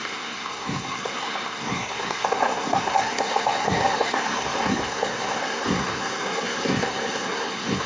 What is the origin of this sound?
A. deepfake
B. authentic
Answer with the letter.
A